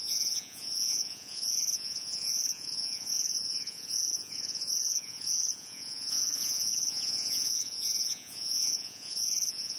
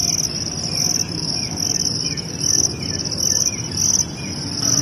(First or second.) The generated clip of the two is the first